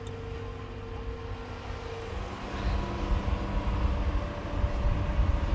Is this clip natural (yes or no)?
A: yes